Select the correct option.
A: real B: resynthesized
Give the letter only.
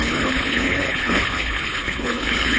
B